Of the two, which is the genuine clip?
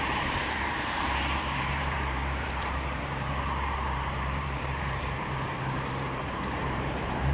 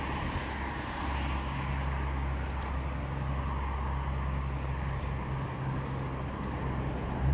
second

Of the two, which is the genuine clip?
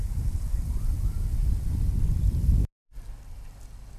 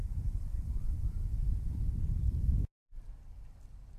first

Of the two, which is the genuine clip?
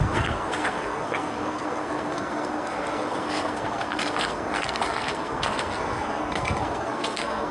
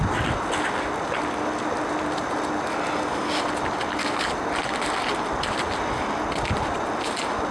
second